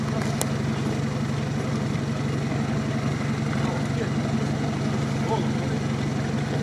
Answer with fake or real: real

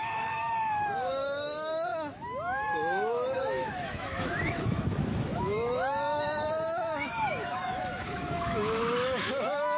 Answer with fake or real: fake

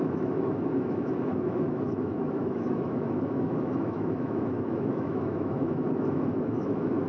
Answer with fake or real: fake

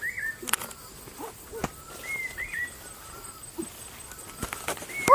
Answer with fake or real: real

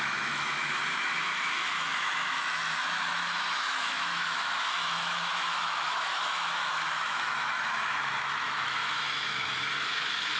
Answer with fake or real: fake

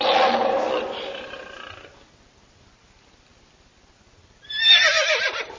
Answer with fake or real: real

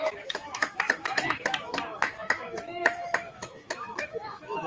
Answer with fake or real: fake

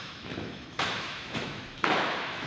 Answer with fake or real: fake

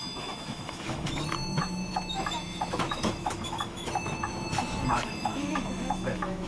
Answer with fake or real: fake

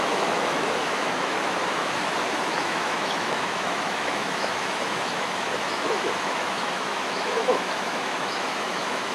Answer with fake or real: fake